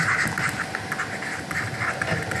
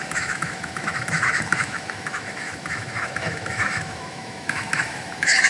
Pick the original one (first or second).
first